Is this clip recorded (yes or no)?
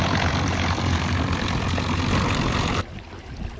yes